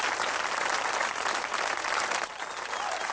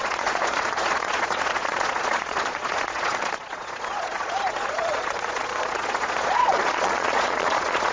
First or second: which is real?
first